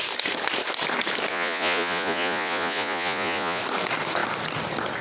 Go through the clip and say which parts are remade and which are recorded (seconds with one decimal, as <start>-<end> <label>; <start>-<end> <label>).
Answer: 0.0-1.3 recorded; 1.3-3.6 remade; 3.6-5.0 recorded